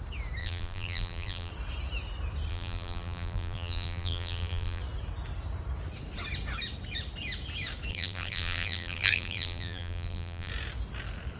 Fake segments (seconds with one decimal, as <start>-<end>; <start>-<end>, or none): 0.4-1.5; 2.5-4.8; 7.9-10.5